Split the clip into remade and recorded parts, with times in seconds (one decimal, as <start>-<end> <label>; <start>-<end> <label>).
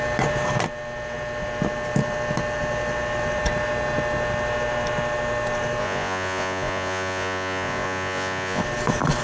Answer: 0.0-5.8 recorded; 5.8-8.6 remade; 8.6-9.2 recorded